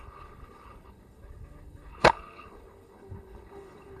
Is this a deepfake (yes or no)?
yes